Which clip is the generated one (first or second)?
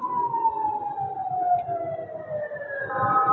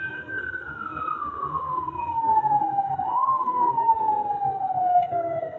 second